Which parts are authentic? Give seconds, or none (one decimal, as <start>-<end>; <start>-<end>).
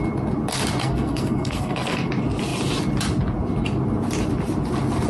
0.0-0.8; 2.1-5.1